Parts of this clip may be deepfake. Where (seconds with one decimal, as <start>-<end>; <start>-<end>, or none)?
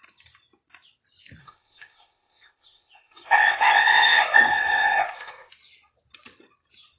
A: 1.4-5.5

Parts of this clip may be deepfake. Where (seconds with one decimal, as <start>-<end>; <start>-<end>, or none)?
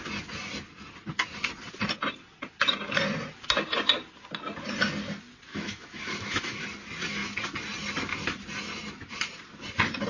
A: 5.5-6.6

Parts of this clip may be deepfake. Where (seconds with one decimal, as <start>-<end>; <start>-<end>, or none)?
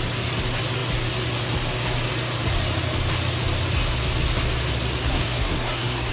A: 5.0-6.1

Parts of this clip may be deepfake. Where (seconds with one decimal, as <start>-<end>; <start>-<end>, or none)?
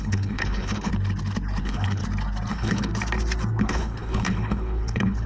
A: 0.0-0.9; 1.6-2.0; 2.5-2.9; 3.6-5.3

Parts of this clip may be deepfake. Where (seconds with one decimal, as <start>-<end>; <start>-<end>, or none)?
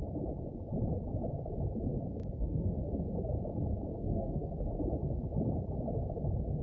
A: 2.2-2.8; 3.9-4.5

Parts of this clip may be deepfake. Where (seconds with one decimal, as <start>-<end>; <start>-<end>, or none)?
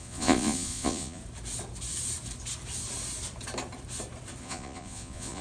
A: 0.0-1.2; 4.4-5.4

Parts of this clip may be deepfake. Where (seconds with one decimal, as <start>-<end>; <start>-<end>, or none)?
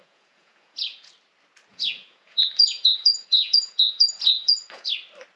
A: 0.0-1.1; 1.7-4.9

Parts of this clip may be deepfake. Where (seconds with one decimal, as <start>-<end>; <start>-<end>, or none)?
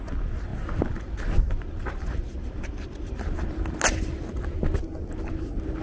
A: none